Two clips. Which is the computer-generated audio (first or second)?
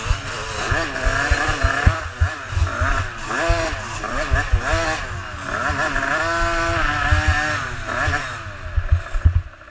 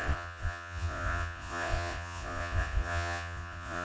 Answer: second